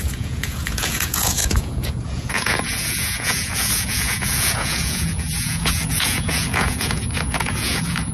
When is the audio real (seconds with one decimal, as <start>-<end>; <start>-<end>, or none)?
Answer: none